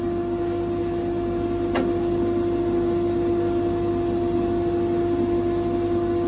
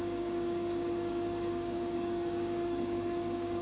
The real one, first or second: first